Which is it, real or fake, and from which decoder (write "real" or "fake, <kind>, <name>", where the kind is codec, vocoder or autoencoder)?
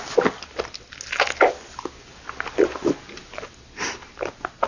real